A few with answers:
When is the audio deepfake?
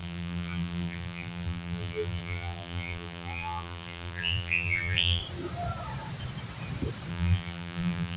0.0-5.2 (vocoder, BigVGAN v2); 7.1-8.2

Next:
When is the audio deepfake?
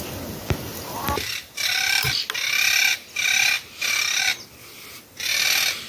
none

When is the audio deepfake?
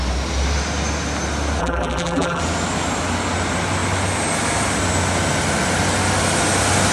1.6-2.4 (vocoder, BigVGAN v2)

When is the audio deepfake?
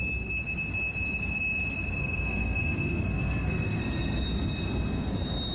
2.0-3.8 (codec, SNAC)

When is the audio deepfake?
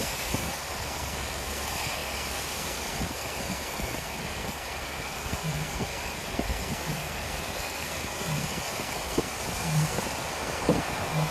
0.0-11.3 (codec, SNAC)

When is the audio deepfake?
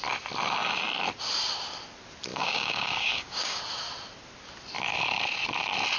2.3-3.6 (codec, DAC)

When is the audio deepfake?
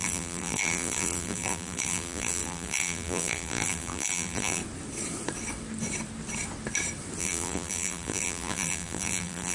0.0-4.6 (vocoder, BigVGAN v2); 7.2-9.5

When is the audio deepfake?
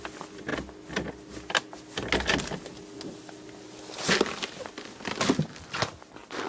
none